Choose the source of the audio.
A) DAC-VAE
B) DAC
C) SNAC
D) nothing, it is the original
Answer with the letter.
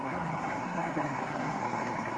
C